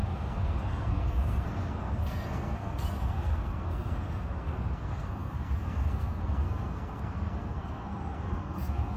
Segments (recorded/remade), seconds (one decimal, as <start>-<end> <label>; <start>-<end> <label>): 0.0-9.0 remade

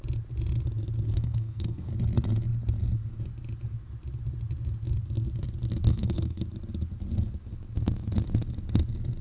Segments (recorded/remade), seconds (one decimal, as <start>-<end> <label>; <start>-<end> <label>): 0.0-1.1 recorded; 1.1-1.9 remade; 1.9-5.9 recorded; 5.9-6.4 remade; 6.4-9.2 recorded

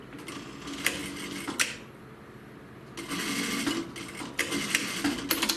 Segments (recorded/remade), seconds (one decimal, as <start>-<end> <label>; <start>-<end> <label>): 0.0-5.6 recorded

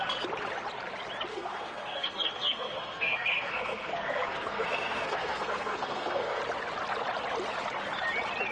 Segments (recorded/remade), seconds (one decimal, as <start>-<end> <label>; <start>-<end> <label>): 0.0-1.3 recorded; 1.3-6.4 remade; 6.4-8.5 recorded

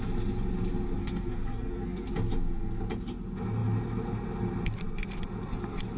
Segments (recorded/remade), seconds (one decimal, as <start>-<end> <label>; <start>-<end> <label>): 0.0-1.0 recorded; 1.0-2.1 remade; 2.1-6.0 recorded